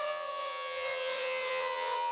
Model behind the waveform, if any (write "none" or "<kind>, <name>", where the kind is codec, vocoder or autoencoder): vocoder, WaveNeXt